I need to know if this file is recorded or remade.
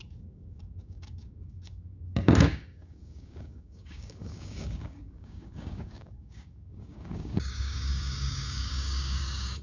remade